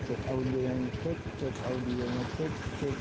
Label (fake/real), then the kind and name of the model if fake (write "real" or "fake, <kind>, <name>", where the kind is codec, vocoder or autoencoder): real